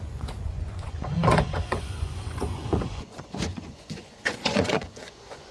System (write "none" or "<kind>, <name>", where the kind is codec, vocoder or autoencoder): vocoder, Vocos